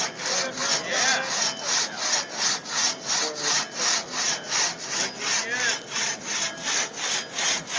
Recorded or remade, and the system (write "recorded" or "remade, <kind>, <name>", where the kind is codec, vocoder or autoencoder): recorded